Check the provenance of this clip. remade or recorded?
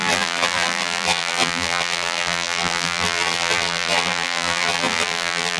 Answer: remade